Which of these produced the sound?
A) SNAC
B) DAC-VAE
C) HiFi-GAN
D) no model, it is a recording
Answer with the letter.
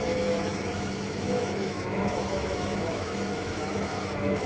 B